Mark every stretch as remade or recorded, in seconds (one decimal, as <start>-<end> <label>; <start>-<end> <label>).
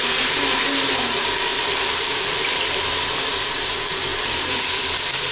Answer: 0.0-1.5 recorded; 1.5-3.5 remade; 3.5-4.1 recorded; 4.1-4.8 remade; 4.8-5.3 recorded